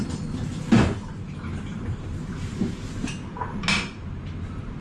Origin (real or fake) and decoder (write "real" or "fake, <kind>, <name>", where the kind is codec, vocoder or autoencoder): real